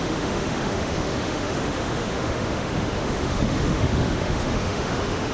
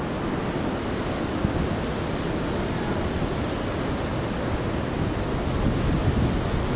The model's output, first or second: first